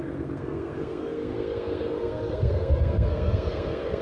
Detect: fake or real fake